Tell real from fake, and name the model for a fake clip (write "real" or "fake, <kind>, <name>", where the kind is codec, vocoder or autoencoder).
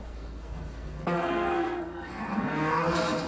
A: fake, codec, SNAC